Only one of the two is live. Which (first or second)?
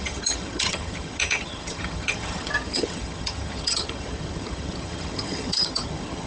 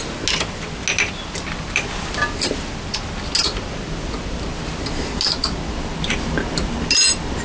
second